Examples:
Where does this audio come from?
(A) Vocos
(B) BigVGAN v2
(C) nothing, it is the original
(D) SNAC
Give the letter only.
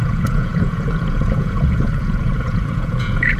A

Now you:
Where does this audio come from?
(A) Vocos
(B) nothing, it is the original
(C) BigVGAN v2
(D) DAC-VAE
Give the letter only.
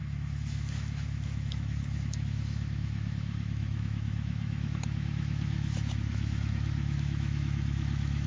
D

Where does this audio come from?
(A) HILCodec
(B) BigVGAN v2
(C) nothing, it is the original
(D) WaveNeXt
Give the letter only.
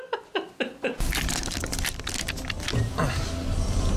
C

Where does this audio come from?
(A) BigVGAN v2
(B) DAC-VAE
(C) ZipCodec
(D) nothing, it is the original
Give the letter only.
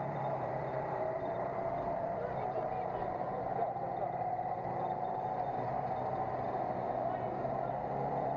A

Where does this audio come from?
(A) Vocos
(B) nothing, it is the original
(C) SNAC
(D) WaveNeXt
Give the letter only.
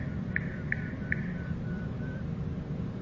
B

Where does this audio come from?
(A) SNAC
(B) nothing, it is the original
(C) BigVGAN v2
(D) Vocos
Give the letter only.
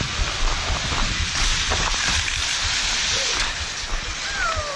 C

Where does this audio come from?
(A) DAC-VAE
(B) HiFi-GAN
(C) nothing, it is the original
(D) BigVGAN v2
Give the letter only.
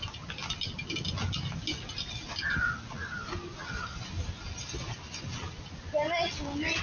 C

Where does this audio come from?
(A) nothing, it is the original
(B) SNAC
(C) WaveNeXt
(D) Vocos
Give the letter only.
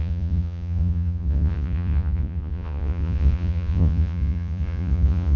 D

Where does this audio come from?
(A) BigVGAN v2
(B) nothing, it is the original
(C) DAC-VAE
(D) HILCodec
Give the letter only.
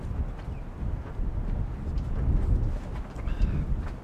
B